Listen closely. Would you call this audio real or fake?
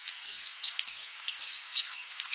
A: fake